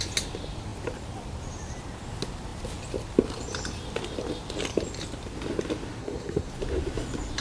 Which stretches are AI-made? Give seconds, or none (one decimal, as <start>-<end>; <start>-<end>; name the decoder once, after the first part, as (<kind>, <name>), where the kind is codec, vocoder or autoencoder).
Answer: 6.0-6.5 (codec, SNAC)